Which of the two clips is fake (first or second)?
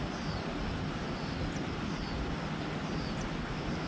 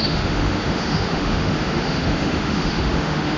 second